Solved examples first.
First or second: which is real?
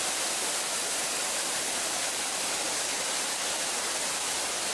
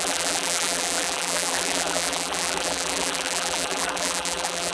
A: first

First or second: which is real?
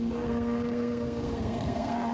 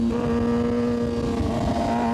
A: second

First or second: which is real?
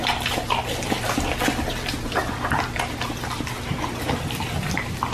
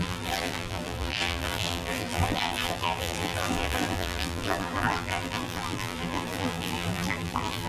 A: first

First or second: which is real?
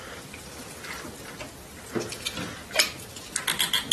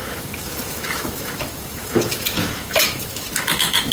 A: first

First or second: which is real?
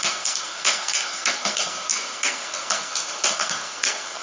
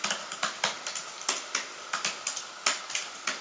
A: second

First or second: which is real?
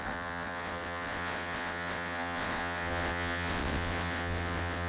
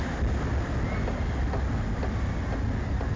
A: second